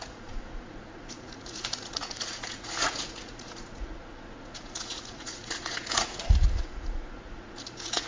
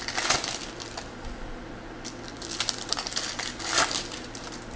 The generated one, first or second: first